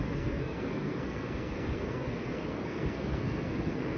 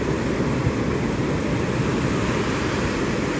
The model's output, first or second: first